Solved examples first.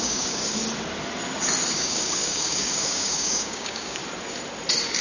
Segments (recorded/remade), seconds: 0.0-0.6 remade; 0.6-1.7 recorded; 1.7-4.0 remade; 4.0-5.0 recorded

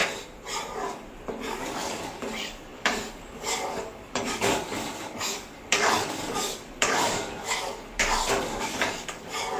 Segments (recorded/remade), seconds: 0.0-1.5 recorded; 1.5-9.6 remade